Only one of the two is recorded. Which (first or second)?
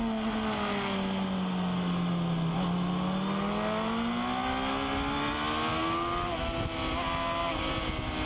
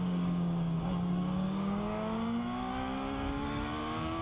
first